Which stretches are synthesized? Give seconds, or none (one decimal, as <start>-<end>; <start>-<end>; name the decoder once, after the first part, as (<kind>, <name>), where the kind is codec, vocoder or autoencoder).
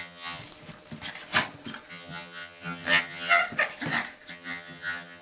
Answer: 0.0-0.4 (vocoder, HiFi-GAN); 1.9-3.4; 4.3-5.2